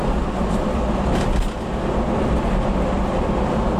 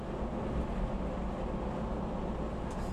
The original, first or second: second